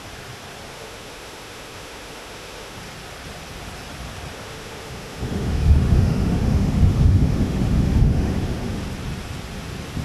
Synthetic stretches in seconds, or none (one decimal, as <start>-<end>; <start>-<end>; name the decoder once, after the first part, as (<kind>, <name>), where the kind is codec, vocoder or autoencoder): 0.7-2.8 (autoencoder, DAC-VAE); 4.3-8.8